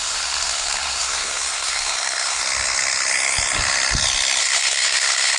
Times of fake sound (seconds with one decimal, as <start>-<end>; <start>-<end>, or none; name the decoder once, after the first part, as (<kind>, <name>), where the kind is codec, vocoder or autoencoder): 0.0-2.4 (codec, SNAC); 4.4-5.4